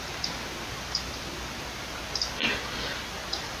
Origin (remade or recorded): recorded